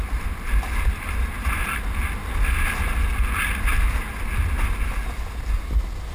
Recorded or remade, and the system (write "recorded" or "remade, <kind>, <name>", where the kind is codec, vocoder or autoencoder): recorded